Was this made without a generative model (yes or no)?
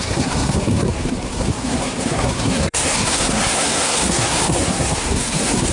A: no